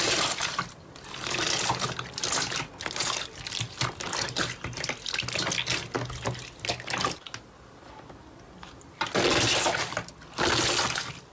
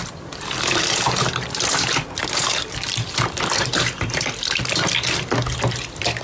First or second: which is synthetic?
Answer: second